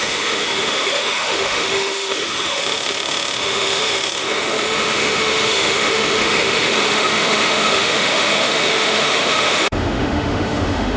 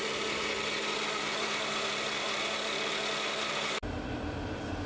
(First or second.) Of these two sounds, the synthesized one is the first